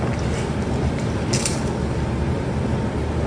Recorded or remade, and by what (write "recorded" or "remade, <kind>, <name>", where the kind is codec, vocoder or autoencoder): recorded